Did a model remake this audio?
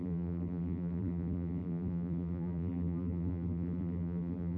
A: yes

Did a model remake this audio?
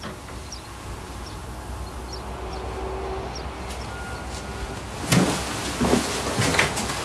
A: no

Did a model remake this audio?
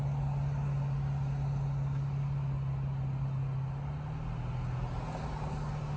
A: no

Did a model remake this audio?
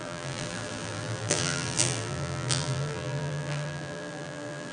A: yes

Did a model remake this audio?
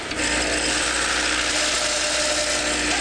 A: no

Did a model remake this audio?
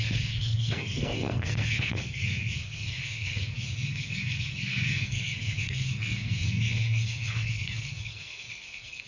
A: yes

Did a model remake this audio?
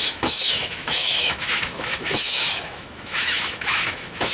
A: yes